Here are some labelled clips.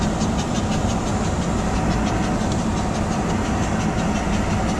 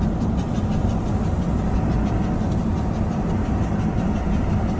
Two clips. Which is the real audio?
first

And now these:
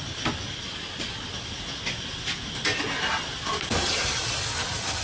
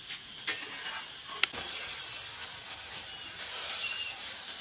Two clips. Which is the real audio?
second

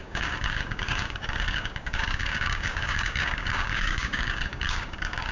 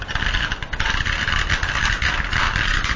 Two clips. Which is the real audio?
second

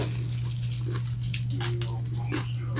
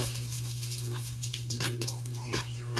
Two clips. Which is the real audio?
first